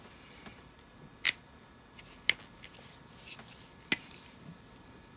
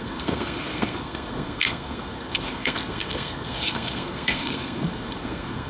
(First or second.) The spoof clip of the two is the second